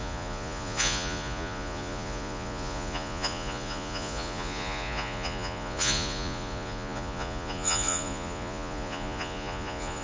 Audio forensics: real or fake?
fake